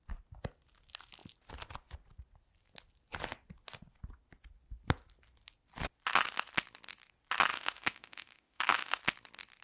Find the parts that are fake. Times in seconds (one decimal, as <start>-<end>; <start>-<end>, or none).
7.5-9.0